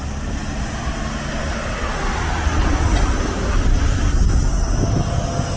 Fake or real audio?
real